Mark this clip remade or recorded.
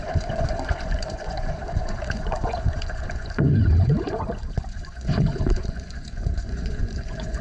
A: remade